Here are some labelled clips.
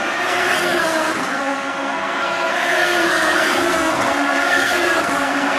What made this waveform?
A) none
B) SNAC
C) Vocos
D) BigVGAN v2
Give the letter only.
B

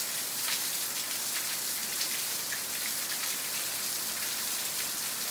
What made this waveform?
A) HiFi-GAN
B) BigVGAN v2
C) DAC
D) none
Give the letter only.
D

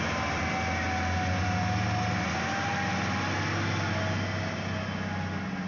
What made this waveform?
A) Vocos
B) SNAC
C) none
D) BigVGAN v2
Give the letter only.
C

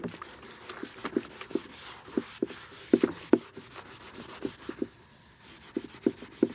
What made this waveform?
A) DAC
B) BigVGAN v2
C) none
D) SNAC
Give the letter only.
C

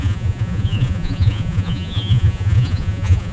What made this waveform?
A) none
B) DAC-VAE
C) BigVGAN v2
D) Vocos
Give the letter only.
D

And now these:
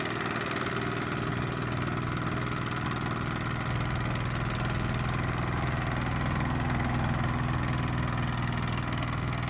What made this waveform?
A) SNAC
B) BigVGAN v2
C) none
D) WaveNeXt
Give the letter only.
C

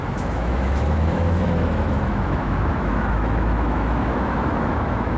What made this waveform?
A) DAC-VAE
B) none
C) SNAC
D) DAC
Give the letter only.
A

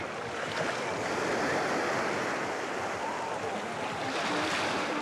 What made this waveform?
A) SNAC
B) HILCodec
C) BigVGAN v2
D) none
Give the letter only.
D